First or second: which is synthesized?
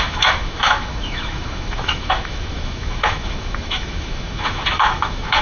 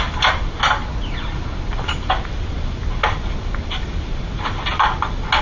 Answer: first